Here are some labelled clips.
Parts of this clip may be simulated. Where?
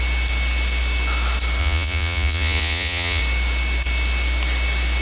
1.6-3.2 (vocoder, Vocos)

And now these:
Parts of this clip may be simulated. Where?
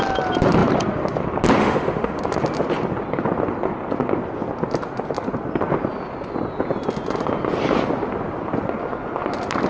1.6-2.2 (autoencoder, DAC-VAE)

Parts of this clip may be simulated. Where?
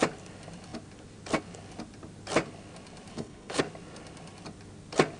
3.1-3.6 (codec, HILCodec)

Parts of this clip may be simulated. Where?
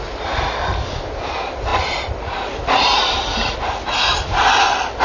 none